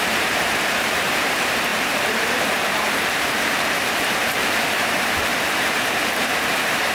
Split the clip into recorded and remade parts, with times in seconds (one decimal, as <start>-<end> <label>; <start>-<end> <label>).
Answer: 0.0-5.3 remade; 5.3-5.9 recorded; 5.9-6.9 remade